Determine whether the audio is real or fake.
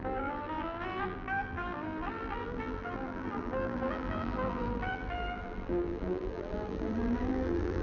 fake